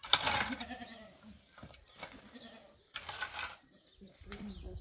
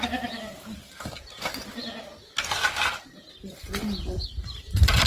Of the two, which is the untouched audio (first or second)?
second